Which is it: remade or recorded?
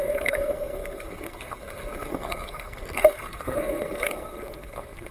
remade